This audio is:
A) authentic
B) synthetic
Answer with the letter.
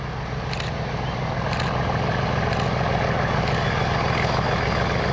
A